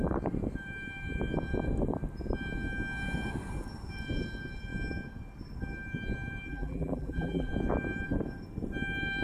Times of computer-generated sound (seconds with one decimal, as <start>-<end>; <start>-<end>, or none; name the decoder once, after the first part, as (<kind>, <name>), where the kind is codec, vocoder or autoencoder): 6.5-7.5 (vocoder, BigVGAN v2)